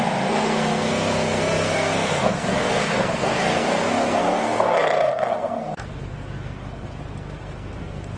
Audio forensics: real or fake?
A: fake